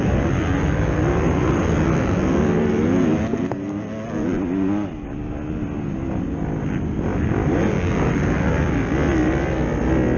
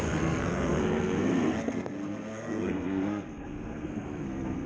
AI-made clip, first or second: second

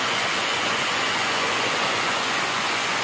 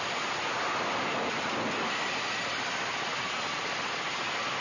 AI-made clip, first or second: first